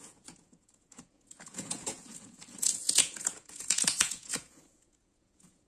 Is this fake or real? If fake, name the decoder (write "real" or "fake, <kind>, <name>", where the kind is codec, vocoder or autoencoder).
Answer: fake, vocoder, Vocos